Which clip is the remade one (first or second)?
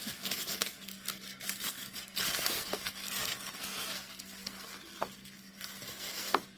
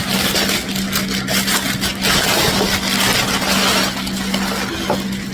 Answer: first